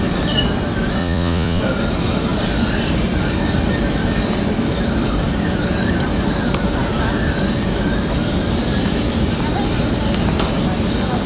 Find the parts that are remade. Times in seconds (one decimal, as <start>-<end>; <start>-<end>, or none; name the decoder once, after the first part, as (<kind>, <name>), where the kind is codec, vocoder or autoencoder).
1.0-1.6 (vocoder, Vocos)